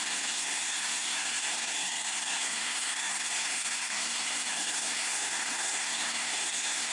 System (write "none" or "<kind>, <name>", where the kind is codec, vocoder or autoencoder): codec, SNAC